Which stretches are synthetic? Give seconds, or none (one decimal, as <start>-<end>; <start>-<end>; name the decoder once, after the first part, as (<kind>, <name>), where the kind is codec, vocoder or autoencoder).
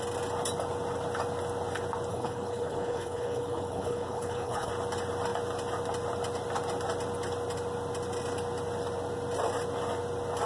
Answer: 2.1-4.7 (codec, HILCodec)